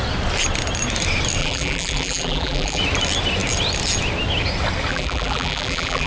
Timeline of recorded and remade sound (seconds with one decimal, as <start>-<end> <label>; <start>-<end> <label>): 0.0-1.4 recorded; 1.4-2.8 remade; 2.8-4.9 recorded; 4.9-6.1 remade